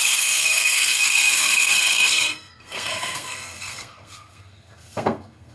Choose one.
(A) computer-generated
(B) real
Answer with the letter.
A